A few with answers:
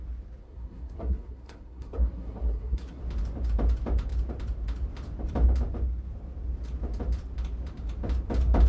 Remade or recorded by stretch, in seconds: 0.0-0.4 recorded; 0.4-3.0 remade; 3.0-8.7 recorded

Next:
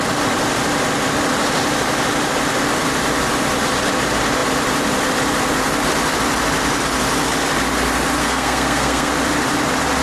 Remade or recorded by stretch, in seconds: 0.0-8.2 recorded; 8.2-9.1 remade; 9.1-10.0 recorded

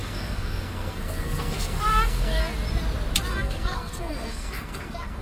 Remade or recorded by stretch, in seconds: 0.0-2.4 remade; 2.4-3.3 recorded; 3.3-5.2 remade

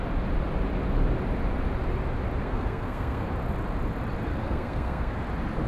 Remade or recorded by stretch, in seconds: 0.0-2.4 recorded; 2.4-3.3 remade; 3.3-4.4 recorded; 4.4-5.2 remade; 5.2-5.7 recorded

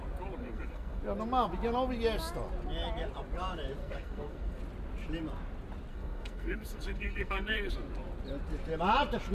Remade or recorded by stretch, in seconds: 0.0-0.4 recorded; 0.4-1.0 remade; 1.0-3.8 recorded; 3.8-4.6 remade; 4.6-5.9 recorded; 5.9-7.7 remade; 7.7-9.3 recorded

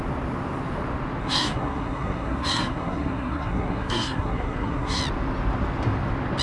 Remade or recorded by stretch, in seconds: 0.0-1.2 recorded; 1.2-5.0 remade; 5.0-6.4 recorded

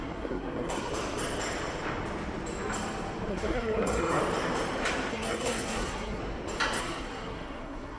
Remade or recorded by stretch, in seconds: 0.0-0.9 remade; 0.9-3.3 recorded; 3.3-4.2 remade; 4.2-5.1 recorded; 5.1-6.2 remade; 6.2-6.8 recorded; 6.8-8.0 remade

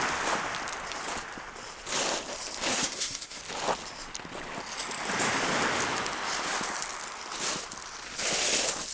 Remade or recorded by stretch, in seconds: 0.0-2.7 recorded; 2.7-3.4 remade; 3.4-8.9 recorded